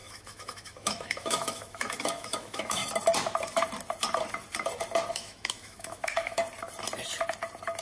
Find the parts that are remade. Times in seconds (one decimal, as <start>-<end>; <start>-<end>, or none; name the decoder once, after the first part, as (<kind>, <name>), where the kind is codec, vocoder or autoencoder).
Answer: 0.0-2.8 (autoencoder, DAC-VAE); 5.1-6.4